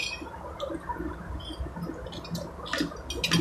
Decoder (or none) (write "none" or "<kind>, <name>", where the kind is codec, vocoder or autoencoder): none